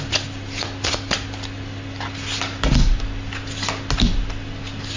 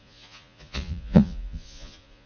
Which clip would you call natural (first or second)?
first